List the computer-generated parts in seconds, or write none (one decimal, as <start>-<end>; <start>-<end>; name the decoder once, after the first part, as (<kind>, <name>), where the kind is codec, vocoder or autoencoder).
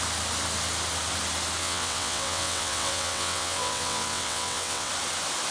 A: 1.6-4.9 (vocoder, WaveNeXt)